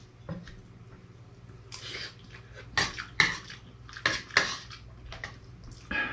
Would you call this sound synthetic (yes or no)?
no